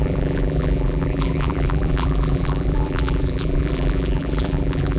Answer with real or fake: fake